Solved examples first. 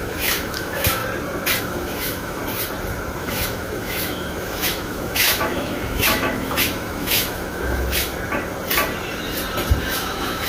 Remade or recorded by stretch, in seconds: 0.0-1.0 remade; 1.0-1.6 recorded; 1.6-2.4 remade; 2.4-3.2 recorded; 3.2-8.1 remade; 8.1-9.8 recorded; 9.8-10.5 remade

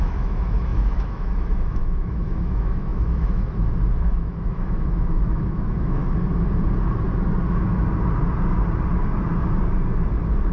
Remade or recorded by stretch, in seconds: 0.0-6.0 remade; 6.0-10.5 recorded

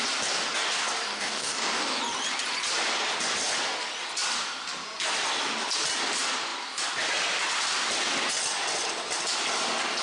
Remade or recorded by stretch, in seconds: 0.0-1.1 recorded; 1.1-2.0 remade; 2.0-10.0 recorded

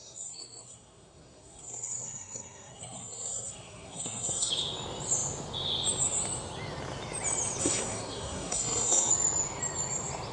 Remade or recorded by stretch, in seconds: 0.0-4.5 remade; 4.5-7.6 recorded; 7.6-9.1 remade; 9.1-10.3 recorded

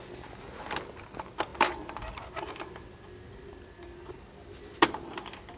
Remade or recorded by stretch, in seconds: 0.0-5.6 recorded